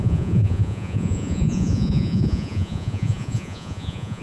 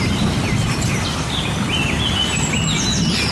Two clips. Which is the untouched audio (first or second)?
second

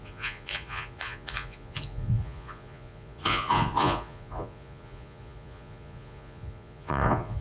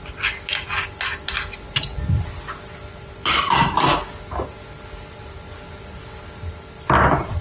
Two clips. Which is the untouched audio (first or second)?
second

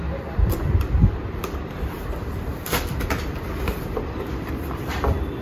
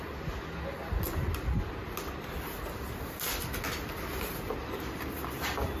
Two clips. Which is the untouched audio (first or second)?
second